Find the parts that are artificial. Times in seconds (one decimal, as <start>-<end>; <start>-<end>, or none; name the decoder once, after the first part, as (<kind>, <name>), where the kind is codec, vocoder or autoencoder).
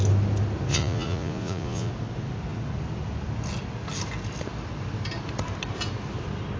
0.7-1.9 (vocoder, Vocos)